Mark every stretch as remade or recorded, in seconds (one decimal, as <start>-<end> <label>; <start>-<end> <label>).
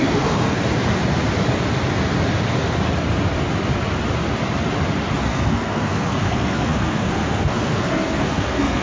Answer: 0.0-0.6 remade; 0.6-5.2 recorded; 5.2-8.8 remade